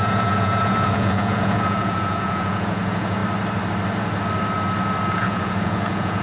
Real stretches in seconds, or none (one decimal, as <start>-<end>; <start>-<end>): 3.2-5.1